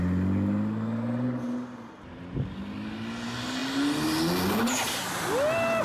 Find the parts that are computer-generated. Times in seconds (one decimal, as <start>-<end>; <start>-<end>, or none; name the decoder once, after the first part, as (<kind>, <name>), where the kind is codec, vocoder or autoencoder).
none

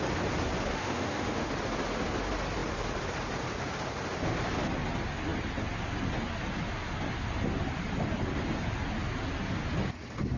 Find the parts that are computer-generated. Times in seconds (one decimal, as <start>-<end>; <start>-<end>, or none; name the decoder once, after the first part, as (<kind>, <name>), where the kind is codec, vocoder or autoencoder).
0.7-1.5 (autoencoder, DAC-VAE)

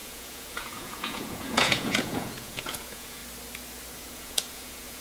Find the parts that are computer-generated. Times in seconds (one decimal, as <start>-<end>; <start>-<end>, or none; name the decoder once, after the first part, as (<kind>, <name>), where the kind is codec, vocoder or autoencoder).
0.0-3.2 (vocoder, Vocos); 3.9-5.0

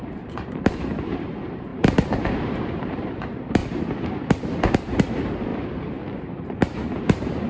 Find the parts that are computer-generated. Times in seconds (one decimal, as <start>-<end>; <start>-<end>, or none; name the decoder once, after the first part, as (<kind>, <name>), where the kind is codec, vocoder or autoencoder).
0.0-3.6 (vocoder, BigVGAN v2); 5.1-5.5; 6.5-7.5

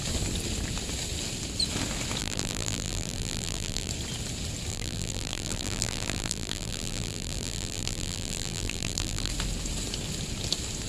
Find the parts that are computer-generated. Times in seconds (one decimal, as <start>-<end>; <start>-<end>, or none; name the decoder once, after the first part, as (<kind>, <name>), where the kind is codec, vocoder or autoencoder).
2.2-3.9 (vocoder, BigVGAN v2); 4.7-9.3

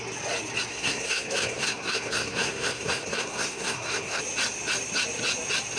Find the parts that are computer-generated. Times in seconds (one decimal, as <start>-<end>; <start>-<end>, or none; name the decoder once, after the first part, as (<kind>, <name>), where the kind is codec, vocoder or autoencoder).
0.7-4.2 (codec, SNAC)

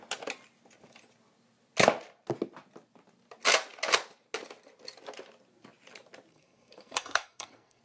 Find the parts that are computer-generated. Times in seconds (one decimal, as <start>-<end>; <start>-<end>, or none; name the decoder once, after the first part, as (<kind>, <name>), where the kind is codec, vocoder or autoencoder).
6.3-7.8 (codec, SNAC)